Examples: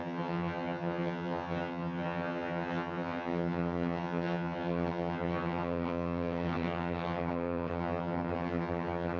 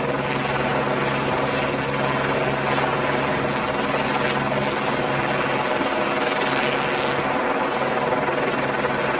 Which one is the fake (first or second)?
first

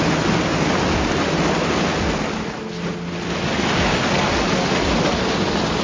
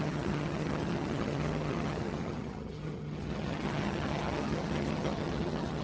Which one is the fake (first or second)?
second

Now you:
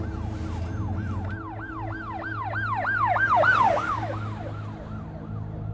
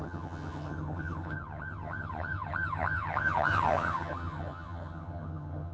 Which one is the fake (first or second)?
second